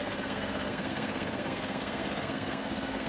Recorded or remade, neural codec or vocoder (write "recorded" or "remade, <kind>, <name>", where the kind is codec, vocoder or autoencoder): remade, codec, SNAC